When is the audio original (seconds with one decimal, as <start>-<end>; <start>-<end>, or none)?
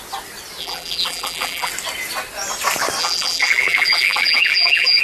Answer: 0.0-0.6; 1.7-3.0